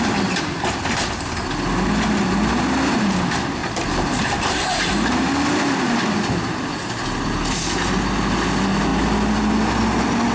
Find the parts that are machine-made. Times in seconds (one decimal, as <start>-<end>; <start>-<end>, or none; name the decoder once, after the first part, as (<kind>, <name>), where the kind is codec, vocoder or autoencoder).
3.6-5.3 (vocoder, BigVGAN v2)